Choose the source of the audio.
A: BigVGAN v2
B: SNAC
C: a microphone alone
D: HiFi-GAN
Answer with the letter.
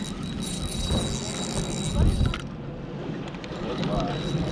C